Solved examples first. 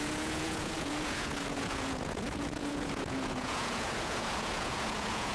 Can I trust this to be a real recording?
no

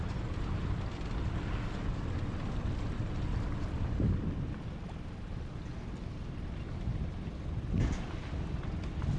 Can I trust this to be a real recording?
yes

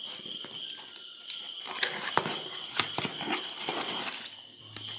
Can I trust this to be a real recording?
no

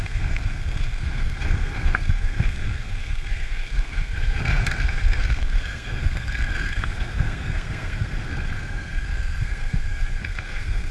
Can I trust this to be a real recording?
no